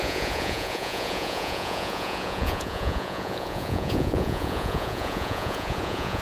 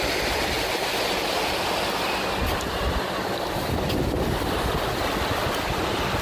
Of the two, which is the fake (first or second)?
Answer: first